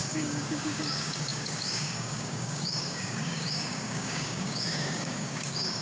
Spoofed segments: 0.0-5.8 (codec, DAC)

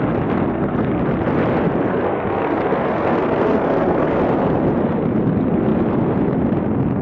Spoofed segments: 0.5-1.0 (codec, SNAC); 1.9-4.2

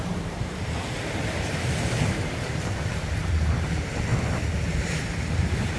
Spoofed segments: 0.0-4.1 (vocoder, BigVGAN v2); 4.9-5.8

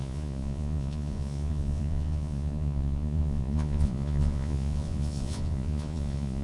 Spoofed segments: 0.0-6.4 (vocoder, Vocos)

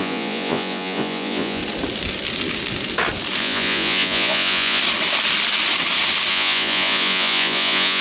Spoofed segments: 0.0-1.6 (vocoder, Vocos); 3.4-4.8; 6.3-8.0